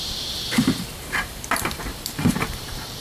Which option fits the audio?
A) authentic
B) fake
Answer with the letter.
B